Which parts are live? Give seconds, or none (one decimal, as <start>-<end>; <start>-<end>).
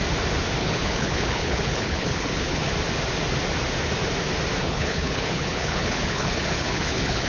0.0-0.6; 2.7-4.6